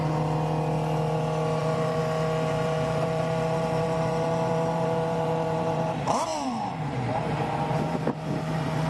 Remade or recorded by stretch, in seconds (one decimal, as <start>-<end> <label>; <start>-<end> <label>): 0.0-1.6 recorded; 1.6-2.0 remade; 2.0-2.5 recorded; 2.5-8.9 remade